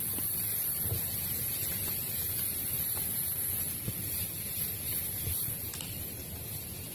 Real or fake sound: real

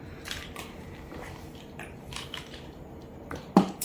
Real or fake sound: fake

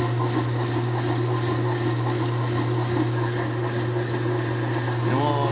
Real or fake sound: real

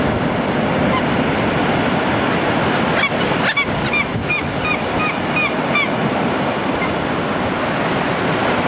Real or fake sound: real